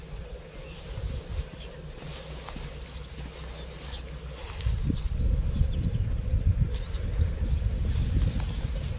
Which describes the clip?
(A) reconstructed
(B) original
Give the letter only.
B